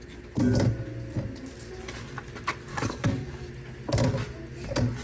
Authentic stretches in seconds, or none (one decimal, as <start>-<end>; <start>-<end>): 0.0-2.7; 3.5-5.0